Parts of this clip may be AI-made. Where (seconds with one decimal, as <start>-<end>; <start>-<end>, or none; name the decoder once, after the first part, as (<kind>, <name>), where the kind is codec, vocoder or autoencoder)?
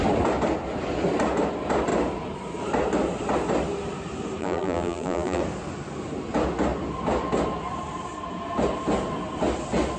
4.4-5.4 (vocoder, BigVGAN v2)